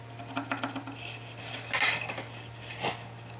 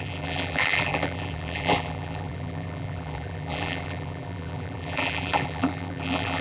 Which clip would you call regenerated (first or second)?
second